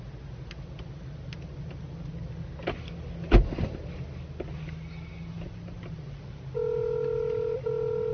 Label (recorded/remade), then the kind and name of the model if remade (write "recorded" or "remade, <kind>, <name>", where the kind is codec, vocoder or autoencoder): recorded